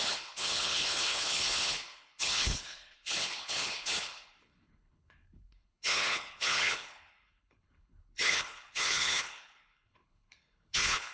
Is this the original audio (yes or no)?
no